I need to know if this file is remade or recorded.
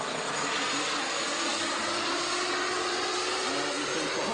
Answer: recorded